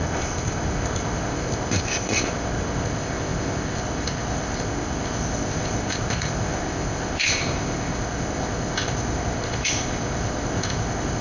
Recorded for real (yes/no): no